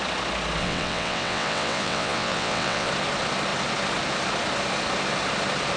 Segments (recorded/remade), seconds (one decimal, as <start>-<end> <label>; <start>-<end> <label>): 0.0-0.6 recorded; 0.6-2.9 remade; 2.9-5.8 recorded